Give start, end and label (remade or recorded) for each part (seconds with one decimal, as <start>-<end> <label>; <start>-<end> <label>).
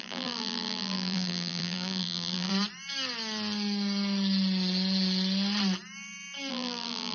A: 0.0-2.5 remade; 2.5-6.5 recorded; 6.5-7.1 remade